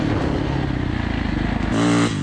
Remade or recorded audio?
recorded